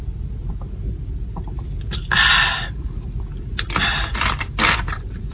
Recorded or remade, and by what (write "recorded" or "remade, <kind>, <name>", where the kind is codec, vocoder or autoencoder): recorded